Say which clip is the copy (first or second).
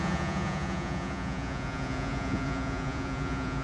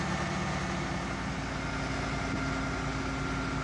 first